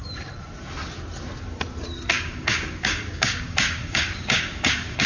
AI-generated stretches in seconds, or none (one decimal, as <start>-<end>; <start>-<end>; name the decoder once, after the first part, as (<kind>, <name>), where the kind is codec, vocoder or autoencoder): 2.1-5.1 (codec, DAC)